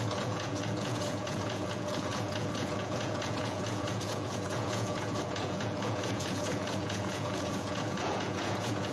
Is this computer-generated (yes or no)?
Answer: yes